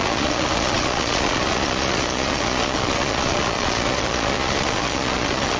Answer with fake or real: fake